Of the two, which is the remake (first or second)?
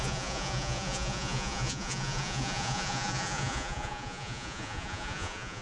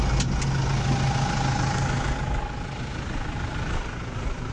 first